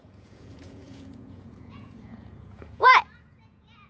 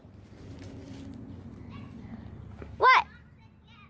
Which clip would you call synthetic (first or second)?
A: first